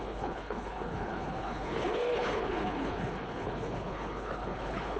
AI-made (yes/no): yes